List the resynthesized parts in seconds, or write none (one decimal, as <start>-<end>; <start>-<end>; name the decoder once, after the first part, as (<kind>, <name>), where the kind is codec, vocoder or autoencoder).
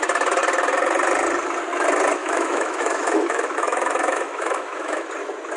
2.2-5.1 (autoencoder, DAC-VAE)